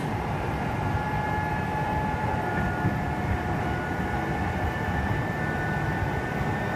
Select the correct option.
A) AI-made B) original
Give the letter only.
B